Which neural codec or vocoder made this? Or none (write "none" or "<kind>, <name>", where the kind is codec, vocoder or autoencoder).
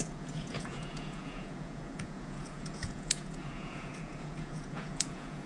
vocoder, Vocos